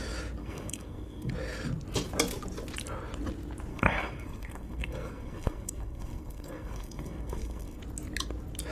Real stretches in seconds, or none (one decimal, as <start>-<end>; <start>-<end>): 0.0-0.4; 1.3-3.7; 7.8-8.7